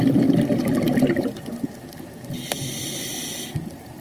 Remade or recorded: recorded